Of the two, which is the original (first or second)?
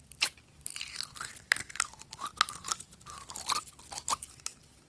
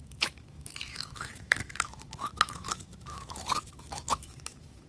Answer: first